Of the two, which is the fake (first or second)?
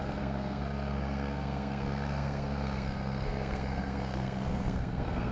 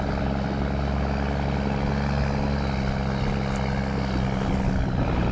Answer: first